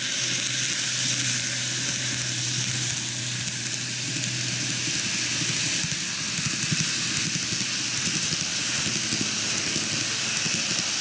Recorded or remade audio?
recorded